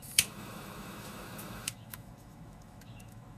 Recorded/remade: remade